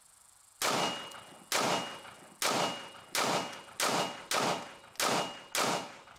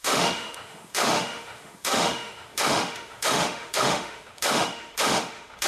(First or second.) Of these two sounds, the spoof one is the second